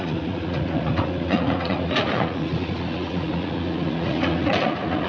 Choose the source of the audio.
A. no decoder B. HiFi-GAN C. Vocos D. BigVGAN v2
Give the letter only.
C